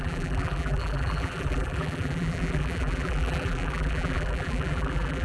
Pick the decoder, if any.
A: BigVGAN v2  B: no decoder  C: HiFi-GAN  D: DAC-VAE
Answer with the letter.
A